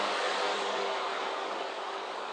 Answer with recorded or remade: remade